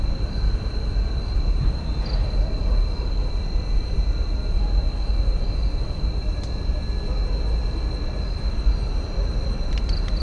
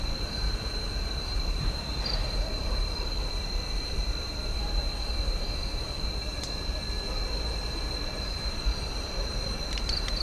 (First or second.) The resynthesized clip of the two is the second